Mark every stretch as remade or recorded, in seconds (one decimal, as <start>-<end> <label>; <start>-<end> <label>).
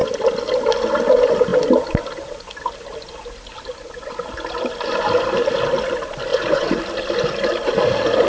0.0-6.3 recorded; 6.3-6.8 remade; 6.8-8.3 recorded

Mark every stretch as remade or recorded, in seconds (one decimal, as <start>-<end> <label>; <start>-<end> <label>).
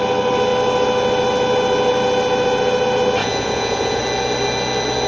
0.0-3.2 recorded; 3.2-4.0 remade; 4.0-5.1 recorded